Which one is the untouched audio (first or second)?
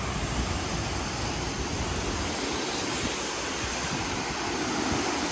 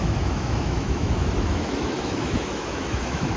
first